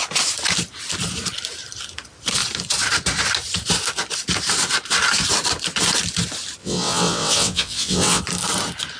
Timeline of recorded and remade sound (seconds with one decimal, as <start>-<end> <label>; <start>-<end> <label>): 0.0-6.6 recorded; 6.6-8.2 remade; 8.2-9.0 recorded